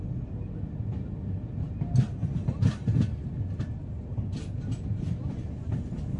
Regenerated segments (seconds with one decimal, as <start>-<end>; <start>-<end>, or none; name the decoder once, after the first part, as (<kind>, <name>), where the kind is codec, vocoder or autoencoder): none